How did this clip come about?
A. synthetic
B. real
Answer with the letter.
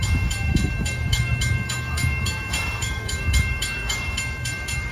A